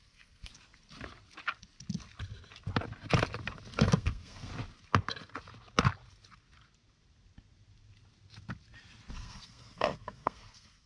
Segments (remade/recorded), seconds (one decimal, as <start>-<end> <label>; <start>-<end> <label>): 0.0-0.5 remade; 0.5-3.7 recorded; 3.7-4.5 remade; 4.5-9.1 recorded; 9.1-10.9 remade